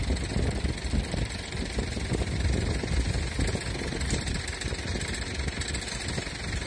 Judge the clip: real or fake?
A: real